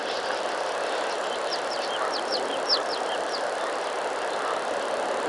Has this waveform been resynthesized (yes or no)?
no